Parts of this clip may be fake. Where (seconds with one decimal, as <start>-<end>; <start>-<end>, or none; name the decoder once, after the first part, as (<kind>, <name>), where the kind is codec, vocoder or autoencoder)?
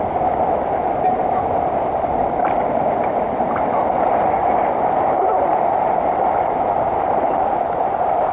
none